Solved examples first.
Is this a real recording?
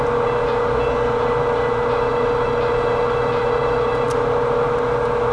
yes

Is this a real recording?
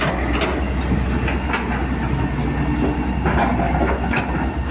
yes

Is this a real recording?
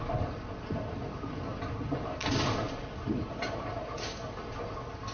yes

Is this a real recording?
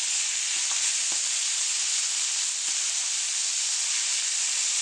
yes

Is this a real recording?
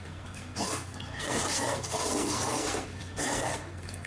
no